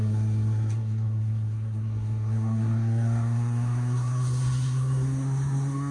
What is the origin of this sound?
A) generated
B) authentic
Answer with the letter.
A